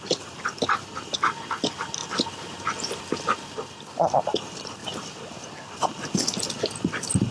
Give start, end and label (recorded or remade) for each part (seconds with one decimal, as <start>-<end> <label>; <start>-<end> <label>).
0.0-7.3 recorded